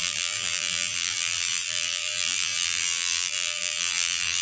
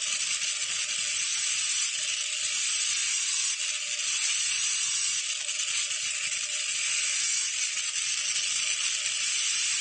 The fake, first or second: first